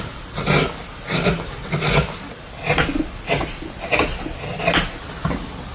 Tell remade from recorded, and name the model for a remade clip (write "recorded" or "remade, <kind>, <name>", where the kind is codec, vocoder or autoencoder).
recorded